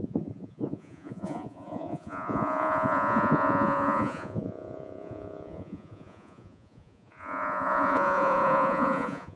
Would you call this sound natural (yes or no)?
no